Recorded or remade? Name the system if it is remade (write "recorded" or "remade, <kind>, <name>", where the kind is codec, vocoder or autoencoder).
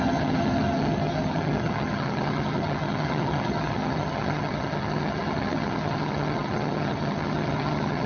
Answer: remade, vocoder, HiFi-GAN